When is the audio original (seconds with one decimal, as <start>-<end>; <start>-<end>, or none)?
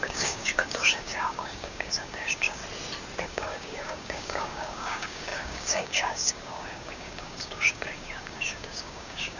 2.6-3.2